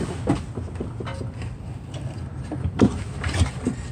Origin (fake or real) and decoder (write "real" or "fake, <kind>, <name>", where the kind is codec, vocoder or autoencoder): real